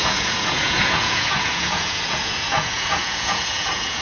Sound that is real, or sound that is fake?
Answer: fake